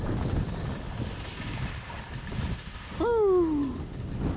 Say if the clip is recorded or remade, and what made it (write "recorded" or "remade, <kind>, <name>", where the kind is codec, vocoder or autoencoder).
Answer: recorded